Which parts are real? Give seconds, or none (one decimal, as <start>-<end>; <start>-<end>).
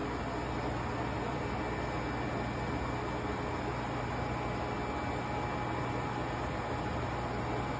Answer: 0.0-7.8